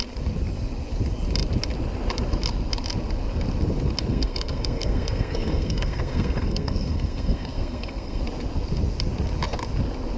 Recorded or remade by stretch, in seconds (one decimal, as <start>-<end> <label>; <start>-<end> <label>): 0.0-4.1 recorded; 4.1-8.2 remade; 8.2-10.2 recorded